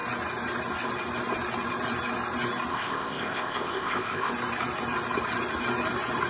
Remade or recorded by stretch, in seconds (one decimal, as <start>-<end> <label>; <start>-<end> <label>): 0.0-2.7 recorded; 2.7-4.3 remade; 4.3-6.3 recorded